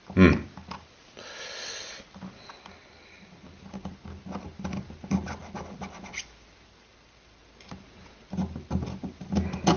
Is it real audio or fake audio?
real